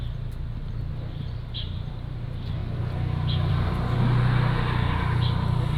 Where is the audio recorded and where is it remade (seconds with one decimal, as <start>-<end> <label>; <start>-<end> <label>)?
0.0-5.8 recorded